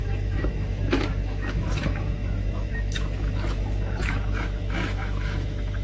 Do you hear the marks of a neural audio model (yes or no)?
yes